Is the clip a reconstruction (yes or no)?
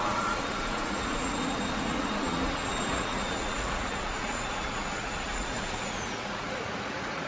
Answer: yes